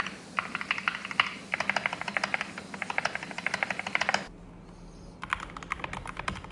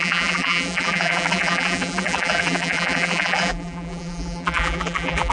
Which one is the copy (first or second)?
second